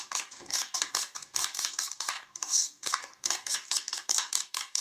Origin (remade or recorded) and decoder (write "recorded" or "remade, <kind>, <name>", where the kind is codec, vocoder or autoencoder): remade, codec, DAC